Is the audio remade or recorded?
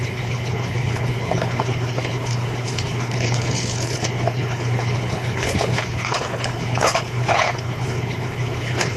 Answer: remade